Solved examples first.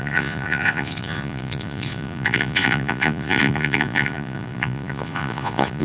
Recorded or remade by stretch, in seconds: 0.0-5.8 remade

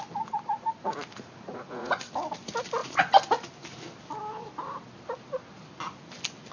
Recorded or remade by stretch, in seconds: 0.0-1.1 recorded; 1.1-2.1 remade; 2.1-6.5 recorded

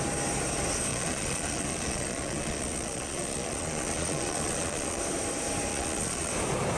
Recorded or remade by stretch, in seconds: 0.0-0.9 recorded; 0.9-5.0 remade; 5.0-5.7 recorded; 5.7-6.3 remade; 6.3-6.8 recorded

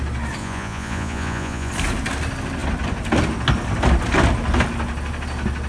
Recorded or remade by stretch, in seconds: 0.0-0.4 recorded; 0.4-1.7 remade; 1.7-5.7 recorded

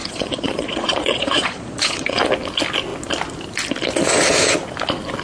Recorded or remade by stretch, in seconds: 0.0-2.3 remade; 2.3-5.2 recorded

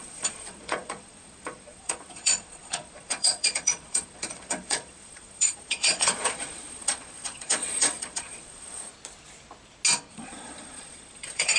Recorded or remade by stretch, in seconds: 0.0-8.9 remade; 8.9-10.1 recorded; 10.1-11.6 remade

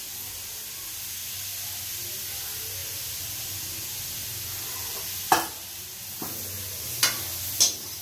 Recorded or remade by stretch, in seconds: 0.0-8.0 recorded